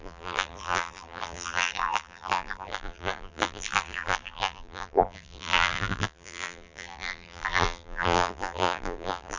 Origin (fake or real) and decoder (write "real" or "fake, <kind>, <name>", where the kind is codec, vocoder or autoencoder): fake, vocoder, BigVGAN v2